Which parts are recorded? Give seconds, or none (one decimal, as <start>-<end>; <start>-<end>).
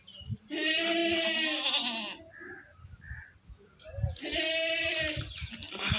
0.0-6.0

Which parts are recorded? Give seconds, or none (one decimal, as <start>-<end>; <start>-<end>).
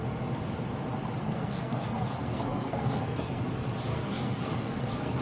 0.0-1.2; 3.4-3.9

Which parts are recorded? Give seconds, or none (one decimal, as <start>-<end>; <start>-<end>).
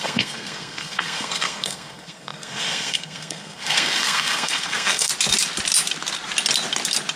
5.1-7.2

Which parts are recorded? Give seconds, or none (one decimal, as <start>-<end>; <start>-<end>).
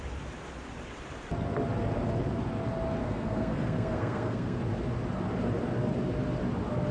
0.0-3.0; 4.6-6.9